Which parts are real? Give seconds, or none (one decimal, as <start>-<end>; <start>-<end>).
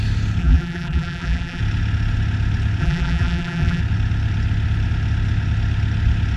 0.0-0.4; 1.6-2.8; 3.8-6.4